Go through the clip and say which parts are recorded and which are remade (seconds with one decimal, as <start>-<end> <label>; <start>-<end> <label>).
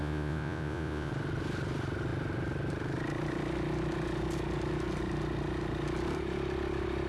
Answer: 0.0-1.1 remade; 1.1-7.1 recorded